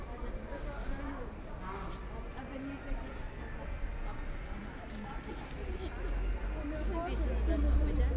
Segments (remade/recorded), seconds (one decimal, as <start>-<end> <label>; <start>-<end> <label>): 0.0-8.2 recorded